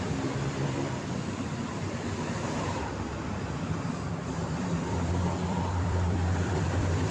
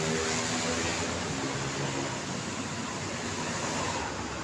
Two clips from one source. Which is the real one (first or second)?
second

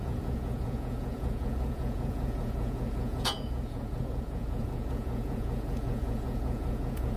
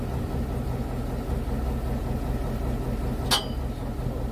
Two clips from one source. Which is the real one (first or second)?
second